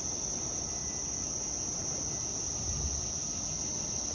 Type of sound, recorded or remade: recorded